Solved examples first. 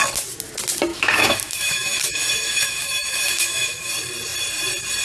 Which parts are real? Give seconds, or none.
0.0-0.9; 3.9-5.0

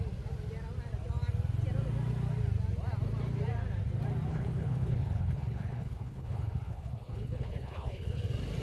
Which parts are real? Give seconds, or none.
0.0-4.3; 8.2-8.6